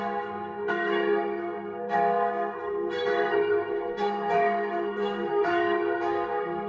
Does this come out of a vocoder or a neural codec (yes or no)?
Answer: yes